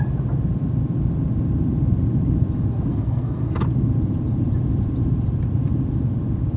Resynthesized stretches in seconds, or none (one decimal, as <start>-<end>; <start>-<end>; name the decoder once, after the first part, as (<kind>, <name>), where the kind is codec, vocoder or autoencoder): 2.9-3.5 (codec, SNAC)